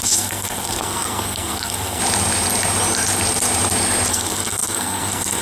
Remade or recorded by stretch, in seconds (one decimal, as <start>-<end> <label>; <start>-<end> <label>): 0.0-2.0 remade; 2.0-4.1 recorded; 4.1-5.4 remade